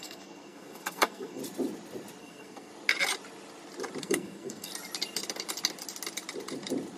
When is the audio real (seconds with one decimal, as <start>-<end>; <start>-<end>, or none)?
1.4-2.2; 2.7-4.0; 4.7-7.0